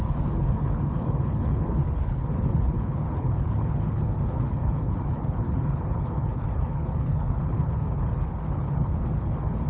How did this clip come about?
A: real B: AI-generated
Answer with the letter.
B